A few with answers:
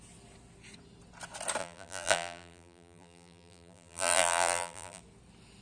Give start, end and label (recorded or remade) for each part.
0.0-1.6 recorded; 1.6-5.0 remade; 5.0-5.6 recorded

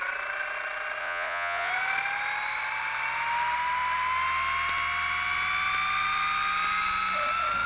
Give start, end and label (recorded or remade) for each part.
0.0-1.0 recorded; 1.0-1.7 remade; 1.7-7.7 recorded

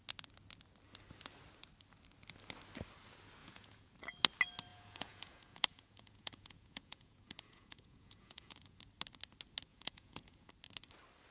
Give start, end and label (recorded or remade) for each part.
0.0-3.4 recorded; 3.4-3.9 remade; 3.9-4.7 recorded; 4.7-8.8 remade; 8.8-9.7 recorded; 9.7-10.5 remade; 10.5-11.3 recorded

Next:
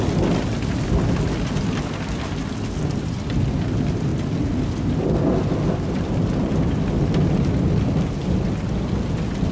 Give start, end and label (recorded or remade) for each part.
0.0-9.5 recorded

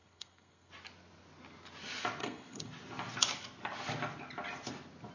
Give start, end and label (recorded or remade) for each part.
0.0-0.7 remade; 0.7-2.2 recorded; 2.2-2.7 remade; 2.7-5.1 recorded

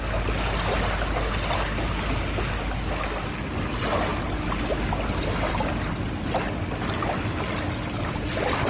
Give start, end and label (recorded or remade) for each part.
0.0-8.7 recorded

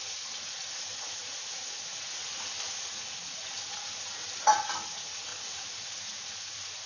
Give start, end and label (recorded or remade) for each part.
0.0-6.9 remade

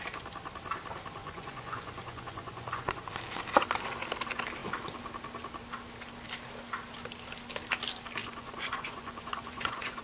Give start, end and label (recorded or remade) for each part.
0.0-1.2 recorded; 1.2-3.1 remade; 3.1-8.2 recorded; 8.2-10.0 remade